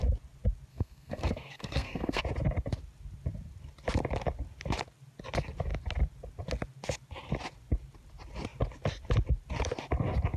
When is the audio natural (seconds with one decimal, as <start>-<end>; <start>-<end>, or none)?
0.0-0.7; 2.2-10.4